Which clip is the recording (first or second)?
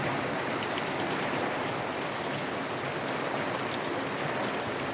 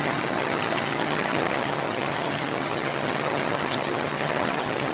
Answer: first